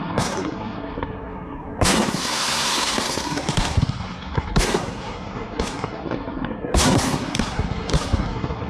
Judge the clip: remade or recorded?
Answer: remade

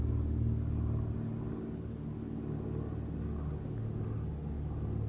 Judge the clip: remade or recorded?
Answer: recorded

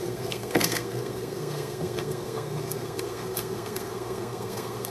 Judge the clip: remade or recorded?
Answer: remade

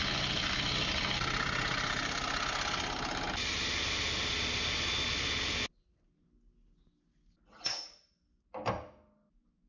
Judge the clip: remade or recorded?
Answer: recorded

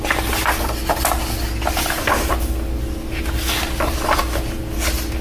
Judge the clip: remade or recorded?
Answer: recorded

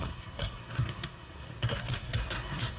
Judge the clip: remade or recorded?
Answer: remade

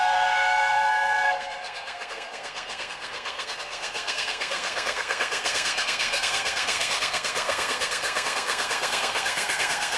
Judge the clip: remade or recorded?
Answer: remade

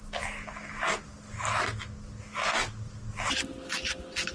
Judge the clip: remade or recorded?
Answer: recorded